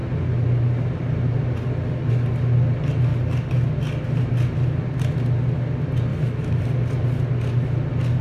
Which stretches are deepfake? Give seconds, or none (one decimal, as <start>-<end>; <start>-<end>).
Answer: 6.1-6.6